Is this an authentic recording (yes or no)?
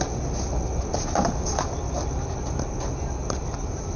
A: yes